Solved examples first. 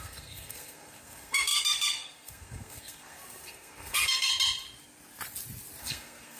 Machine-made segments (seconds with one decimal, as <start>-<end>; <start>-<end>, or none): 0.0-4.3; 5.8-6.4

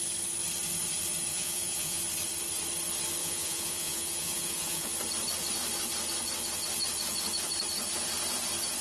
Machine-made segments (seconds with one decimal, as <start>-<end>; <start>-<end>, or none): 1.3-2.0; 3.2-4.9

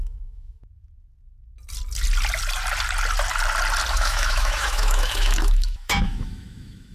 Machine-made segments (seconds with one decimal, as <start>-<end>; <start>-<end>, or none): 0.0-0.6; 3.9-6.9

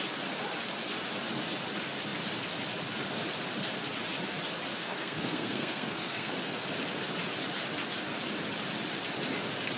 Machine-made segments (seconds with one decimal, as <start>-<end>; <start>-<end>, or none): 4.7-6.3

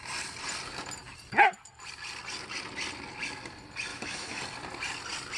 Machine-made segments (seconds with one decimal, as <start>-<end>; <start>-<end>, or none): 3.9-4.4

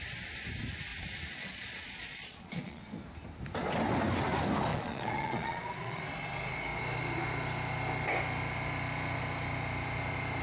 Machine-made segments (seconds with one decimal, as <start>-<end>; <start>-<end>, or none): 0.9-2.8; 4.7-6.0

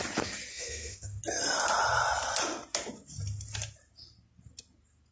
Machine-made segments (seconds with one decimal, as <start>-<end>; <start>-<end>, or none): 0.5-1.2